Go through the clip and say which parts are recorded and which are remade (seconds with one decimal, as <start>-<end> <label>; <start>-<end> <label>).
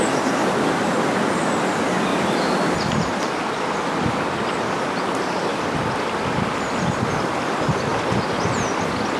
0.0-2.1 recorded; 2.1-4.8 remade; 4.8-9.2 recorded